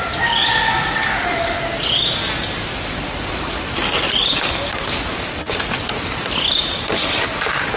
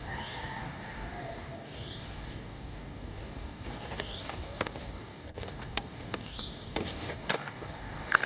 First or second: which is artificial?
second